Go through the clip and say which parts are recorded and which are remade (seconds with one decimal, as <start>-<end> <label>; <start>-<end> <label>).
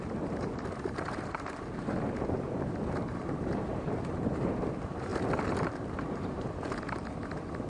0.0-5.1 remade; 5.1-6.0 recorded; 6.0-7.7 remade